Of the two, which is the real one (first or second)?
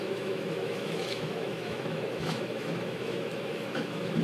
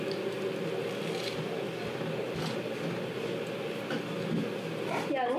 second